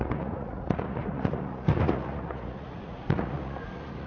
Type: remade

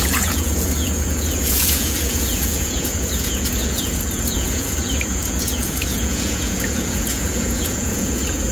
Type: remade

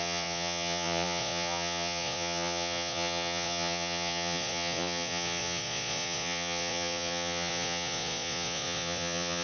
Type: remade